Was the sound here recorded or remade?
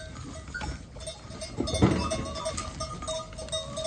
recorded